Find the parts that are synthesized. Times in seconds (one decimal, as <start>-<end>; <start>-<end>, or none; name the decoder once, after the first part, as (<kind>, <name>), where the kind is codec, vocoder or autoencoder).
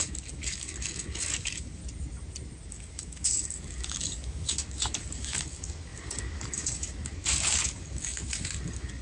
0.0-1.8 (codec, DAC); 2.7-9.0